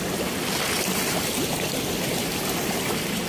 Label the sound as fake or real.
real